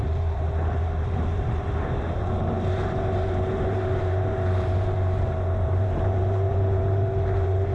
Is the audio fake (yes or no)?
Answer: yes